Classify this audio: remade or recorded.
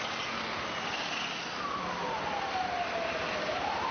recorded